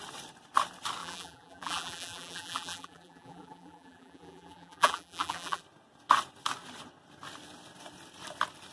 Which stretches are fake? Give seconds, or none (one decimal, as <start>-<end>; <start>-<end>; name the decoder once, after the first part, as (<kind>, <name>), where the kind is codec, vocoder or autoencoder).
1.0-5.6 (vocoder, BigVGAN v2)